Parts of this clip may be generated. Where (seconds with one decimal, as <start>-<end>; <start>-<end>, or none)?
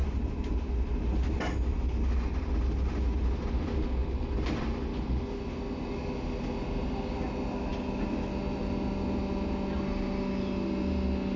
0.0-0.6